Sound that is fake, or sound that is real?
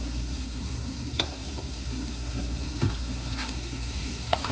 fake